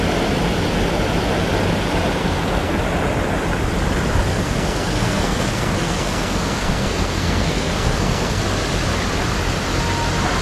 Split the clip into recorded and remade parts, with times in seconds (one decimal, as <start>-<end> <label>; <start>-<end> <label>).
0.0-2.2 recorded; 2.2-2.8 remade; 2.8-4.3 recorded; 4.3-8.4 remade; 8.4-10.4 recorded